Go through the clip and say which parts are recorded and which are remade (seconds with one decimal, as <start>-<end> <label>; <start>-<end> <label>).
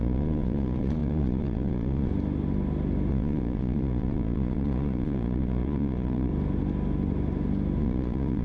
0.0-2.1 remade; 2.1-3.1 recorded; 3.1-6.3 remade; 6.3-7.8 recorded; 7.8-8.4 remade